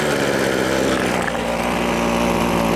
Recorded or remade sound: recorded